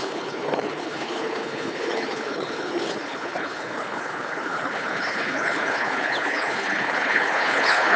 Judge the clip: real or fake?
fake